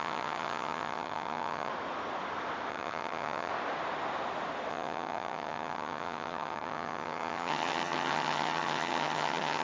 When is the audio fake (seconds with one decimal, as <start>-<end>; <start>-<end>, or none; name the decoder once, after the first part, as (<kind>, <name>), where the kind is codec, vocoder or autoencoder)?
0.0-1.7 (vocoder, HiFi-GAN); 2.7-3.5; 4.7-9.6